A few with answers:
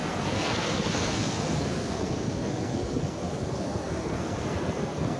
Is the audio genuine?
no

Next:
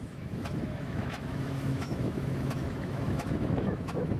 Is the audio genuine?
no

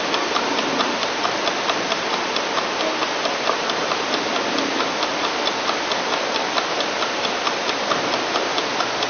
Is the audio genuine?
yes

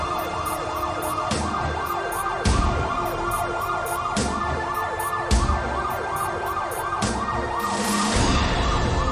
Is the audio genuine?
no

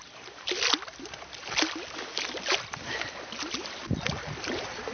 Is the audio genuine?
no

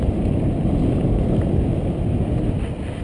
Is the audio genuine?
yes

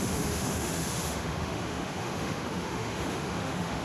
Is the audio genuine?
no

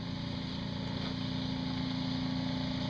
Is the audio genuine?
yes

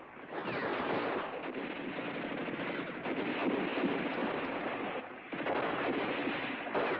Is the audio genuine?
yes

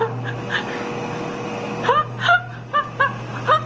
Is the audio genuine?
yes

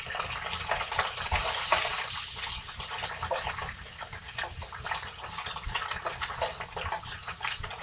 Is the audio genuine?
yes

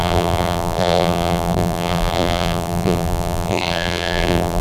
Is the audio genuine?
no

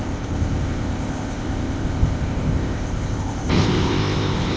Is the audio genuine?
no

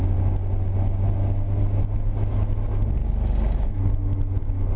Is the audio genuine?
yes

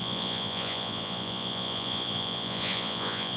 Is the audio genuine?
no